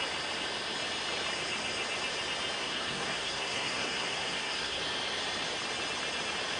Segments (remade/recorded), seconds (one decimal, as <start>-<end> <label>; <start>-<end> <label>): 0.0-2.6 recorded; 2.6-4.8 remade; 4.8-6.6 recorded